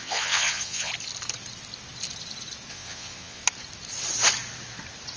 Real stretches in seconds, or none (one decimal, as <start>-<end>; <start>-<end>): 0.9-2.7; 3.4-5.2